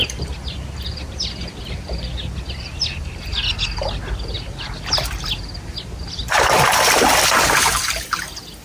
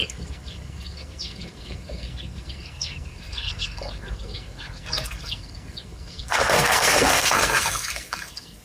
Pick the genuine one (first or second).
first